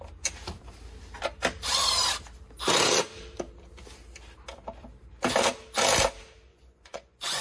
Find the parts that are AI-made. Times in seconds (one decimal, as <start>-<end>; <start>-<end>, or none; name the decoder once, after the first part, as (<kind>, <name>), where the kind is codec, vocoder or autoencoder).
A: 6.5-7.4 (vocoder, Vocos)